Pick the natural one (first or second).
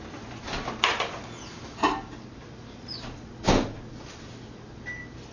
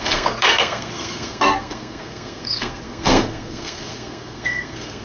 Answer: first